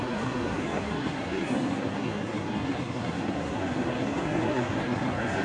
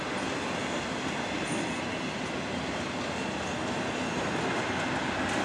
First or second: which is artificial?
first